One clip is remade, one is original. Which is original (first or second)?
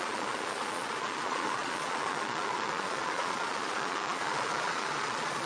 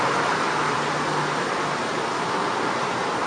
second